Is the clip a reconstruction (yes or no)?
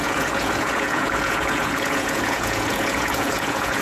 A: yes